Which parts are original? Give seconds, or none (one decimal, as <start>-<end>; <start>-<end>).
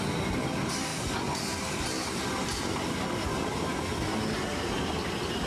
0.0-5.5